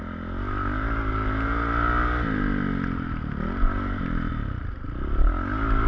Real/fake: real